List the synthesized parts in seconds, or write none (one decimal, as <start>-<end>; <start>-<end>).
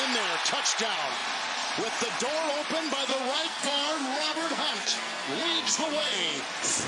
3.1-6.4